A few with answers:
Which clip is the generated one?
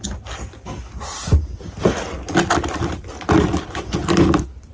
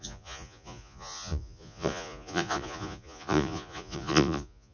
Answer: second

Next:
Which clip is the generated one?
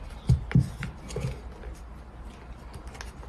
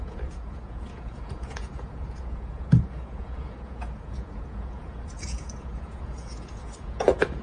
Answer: second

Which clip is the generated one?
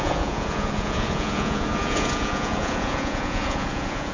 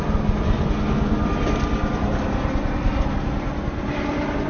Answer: first